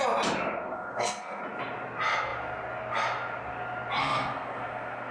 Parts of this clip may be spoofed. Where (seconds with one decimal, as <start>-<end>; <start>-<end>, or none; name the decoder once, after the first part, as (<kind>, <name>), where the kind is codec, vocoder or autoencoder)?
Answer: 0.6-1.4 (codec, SNAC); 4.0-5.1